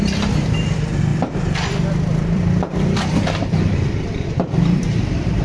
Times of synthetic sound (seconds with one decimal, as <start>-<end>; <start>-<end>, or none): 0.0-5.4

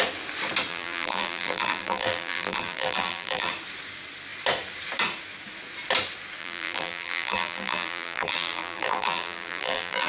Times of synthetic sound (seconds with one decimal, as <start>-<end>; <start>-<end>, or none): 0.7-3.5; 6.4-10.1

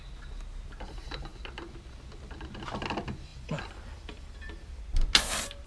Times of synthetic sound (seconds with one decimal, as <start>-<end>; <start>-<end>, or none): 3.3-4.8

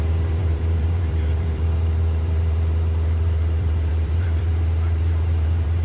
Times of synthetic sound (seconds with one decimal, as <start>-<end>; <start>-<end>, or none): 0.0-5.8

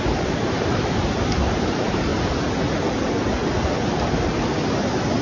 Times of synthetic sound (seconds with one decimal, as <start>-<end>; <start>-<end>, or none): 0.0-2.1

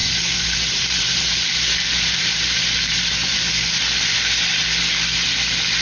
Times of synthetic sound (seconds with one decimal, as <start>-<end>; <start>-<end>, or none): 0.0-3.5

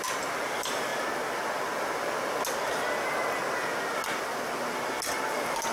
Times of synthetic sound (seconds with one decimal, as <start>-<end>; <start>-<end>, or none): 0.0-0.9; 2.9-3.4; 5.3-5.7

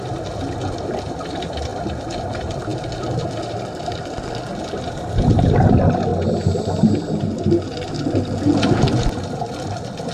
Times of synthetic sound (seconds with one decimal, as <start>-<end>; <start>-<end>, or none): 1.7-2.2